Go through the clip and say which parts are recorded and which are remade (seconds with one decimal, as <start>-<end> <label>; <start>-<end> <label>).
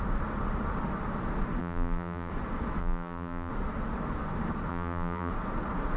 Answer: 0.0-1.6 recorded; 1.6-2.3 remade; 2.3-2.8 recorded; 2.8-3.5 remade; 3.5-4.7 recorded; 4.7-5.3 remade; 5.3-6.0 recorded